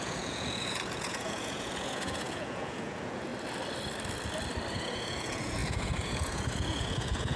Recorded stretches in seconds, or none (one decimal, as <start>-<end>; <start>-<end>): 3.3-4.7